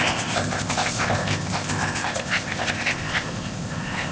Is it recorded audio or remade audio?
remade